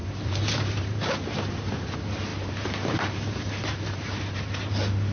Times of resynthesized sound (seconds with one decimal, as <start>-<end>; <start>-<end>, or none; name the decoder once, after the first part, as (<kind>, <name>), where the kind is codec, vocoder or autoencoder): 0.0-1.2 (vocoder, BigVGAN v2); 2.3-4.4